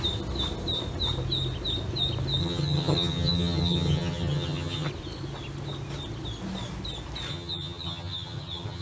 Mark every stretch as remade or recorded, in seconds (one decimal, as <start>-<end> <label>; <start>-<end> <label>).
0.0-2.4 recorded; 2.4-4.9 remade; 4.9-7.3 recorded; 7.3-8.8 remade